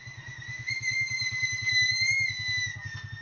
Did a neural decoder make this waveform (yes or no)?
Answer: no